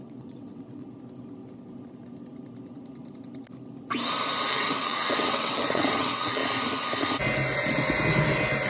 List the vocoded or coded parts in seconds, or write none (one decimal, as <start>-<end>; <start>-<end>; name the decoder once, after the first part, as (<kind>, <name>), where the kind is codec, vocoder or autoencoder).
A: 0.0-0.8 (vocoder, WaveNeXt); 4.5-6.4